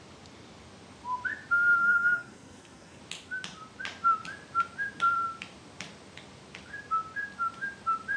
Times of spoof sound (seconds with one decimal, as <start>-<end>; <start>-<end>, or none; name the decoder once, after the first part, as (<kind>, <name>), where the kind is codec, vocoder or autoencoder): 1.8-3.0 (codec, SNAC)